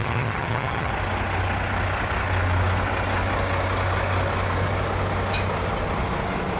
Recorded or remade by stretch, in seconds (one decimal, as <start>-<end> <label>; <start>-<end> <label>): 0.0-0.9 remade; 0.9-6.6 recorded